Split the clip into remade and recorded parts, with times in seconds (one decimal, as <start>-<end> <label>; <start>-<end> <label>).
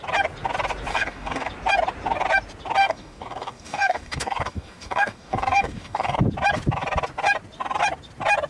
0.0-0.9 recorded; 0.9-1.5 remade; 1.5-2.8 recorded; 2.8-6.2 remade; 6.2-8.5 recorded